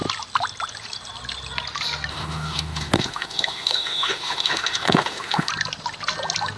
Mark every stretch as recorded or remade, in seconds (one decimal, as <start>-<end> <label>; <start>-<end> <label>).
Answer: 0.0-2.1 recorded; 2.1-5.5 remade; 5.5-6.6 recorded